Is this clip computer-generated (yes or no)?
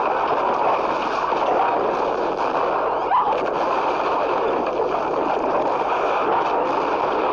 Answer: no